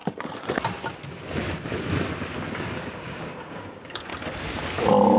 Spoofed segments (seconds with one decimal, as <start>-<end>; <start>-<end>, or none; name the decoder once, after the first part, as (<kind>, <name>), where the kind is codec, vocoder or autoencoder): 2.5-4.1 (codec, DAC)

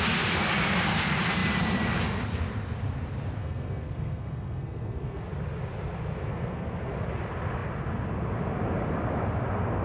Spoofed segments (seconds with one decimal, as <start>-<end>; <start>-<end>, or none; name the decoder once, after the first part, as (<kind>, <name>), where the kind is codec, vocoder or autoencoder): 3.4-5.2 (codec, SNAC); 6.3-6.9

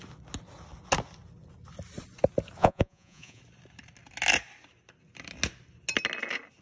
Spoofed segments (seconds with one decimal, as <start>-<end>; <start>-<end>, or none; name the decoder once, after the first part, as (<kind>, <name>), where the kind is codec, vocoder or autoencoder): 2.6-3.4 (vocoder, Vocos)

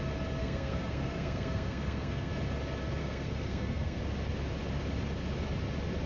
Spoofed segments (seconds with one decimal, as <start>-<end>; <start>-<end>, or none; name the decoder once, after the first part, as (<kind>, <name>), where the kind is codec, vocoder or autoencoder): 0.4-2.3 (codec, SNAC); 3.0-4.0

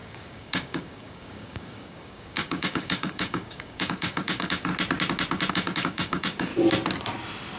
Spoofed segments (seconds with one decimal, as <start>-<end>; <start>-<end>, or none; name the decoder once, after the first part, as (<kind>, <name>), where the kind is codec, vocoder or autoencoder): 0.0-4.7 (codec, DAC); 5.5-6.5

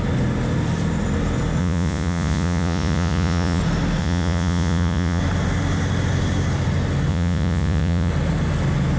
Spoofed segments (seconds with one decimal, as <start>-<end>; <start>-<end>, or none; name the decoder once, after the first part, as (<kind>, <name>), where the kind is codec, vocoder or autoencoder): 1.6-3.6 (vocoder, Vocos); 4.0-5.2; 7.1-8.1

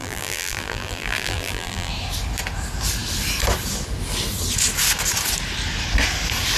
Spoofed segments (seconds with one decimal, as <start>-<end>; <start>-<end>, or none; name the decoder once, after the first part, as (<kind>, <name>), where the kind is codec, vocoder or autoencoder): 0.0-1.9 (vocoder, BigVGAN v2)